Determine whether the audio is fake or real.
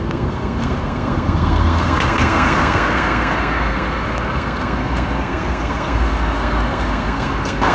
fake